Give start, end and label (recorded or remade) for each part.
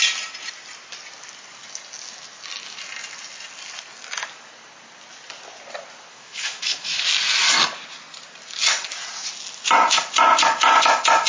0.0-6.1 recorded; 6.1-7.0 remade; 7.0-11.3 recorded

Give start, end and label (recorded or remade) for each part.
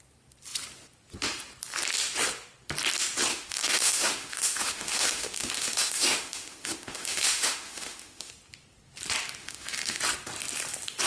0.0-3.3 recorded; 3.3-8.3 remade; 8.3-9.4 recorded; 9.4-10.0 remade; 10.0-11.1 recorded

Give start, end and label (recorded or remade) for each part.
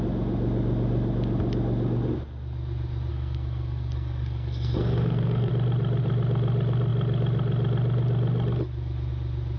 0.0-3.1 recorded; 3.1-5.5 remade; 5.5-9.6 recorded